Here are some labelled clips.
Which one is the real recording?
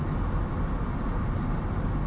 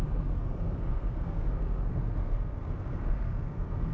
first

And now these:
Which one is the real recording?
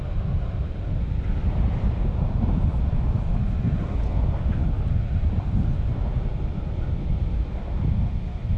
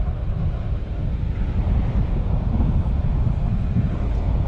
second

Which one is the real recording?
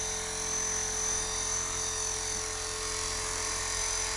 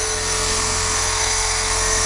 first